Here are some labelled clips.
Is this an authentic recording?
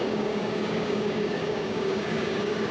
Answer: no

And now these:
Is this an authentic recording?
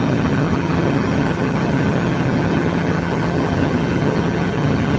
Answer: no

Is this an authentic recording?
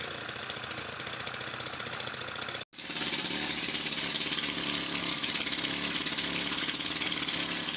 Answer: yes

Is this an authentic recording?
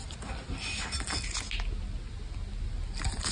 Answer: yes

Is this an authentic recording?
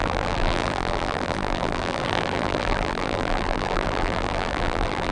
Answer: no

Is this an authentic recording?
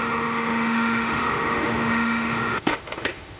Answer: no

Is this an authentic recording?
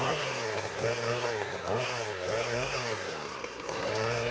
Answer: no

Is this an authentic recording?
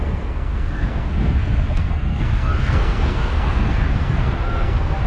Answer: no